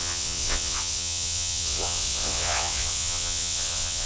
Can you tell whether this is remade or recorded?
remade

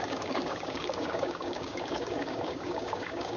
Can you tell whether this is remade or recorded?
remade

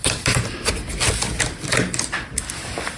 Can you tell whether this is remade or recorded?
recorded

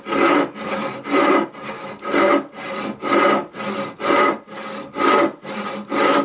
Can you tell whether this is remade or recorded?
recorded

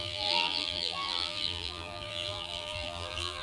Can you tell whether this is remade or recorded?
remade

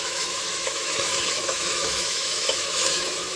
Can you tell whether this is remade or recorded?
remade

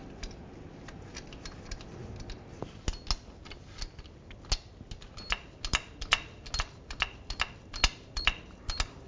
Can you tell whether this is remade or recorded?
recorded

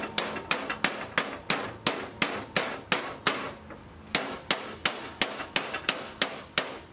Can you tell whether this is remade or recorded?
recorded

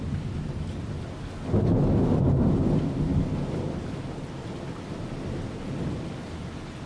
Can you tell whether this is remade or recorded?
recorded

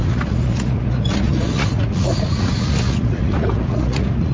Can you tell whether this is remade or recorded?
remade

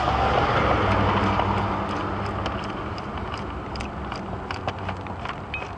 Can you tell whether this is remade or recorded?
recorded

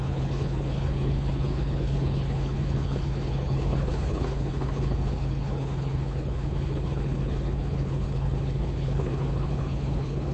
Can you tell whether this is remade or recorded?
remade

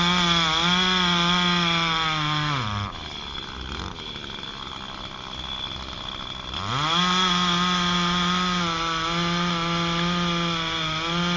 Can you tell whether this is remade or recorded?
recorded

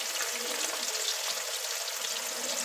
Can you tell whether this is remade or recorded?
recorded